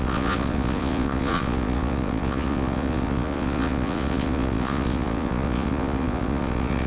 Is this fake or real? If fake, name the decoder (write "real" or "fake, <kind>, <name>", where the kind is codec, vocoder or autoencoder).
fake, vocoder, Vocos